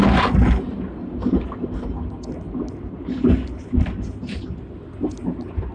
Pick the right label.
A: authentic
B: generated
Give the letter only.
A